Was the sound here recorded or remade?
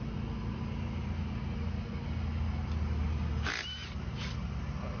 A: recorded